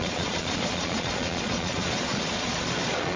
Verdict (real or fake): fake